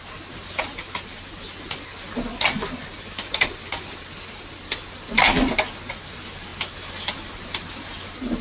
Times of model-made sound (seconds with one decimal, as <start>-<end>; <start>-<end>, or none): none